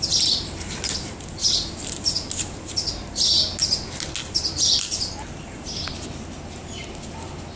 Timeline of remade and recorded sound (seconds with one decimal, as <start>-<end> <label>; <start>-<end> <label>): 0.0-7.6 recorded